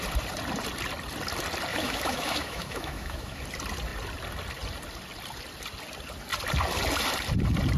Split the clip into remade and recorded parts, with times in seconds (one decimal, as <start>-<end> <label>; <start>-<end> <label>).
0.0-1.7 recorded; 1.7-3.4 remade; 3.4-7.8 recorded